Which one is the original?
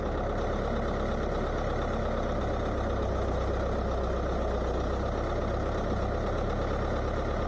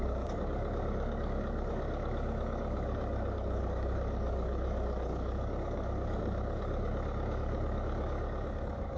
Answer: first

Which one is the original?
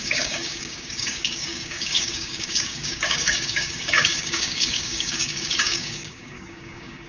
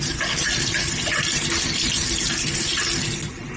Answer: second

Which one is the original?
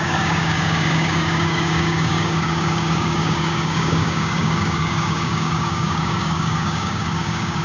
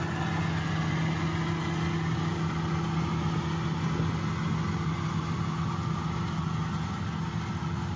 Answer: second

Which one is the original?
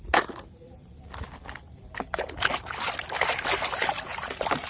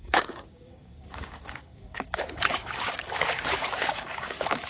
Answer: first